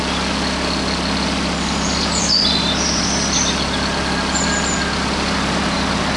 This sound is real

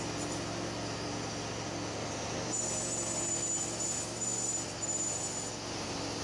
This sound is real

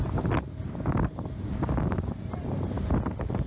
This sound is real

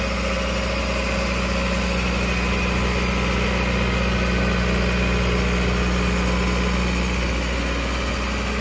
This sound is real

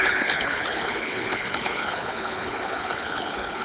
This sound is fake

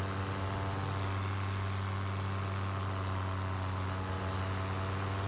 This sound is real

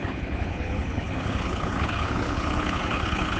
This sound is fake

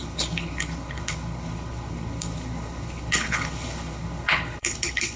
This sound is fake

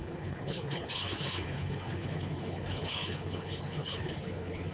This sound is fake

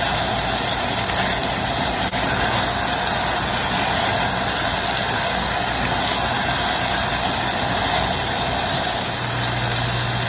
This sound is real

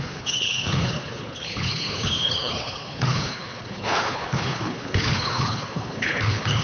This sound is fake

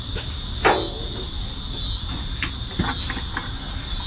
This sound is real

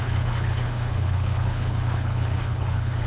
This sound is fake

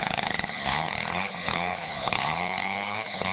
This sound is fake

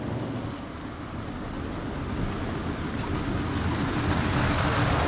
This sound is real